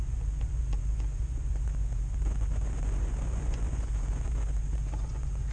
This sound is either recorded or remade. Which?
remade